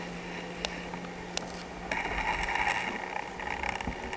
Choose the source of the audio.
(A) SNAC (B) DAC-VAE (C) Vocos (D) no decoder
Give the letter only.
D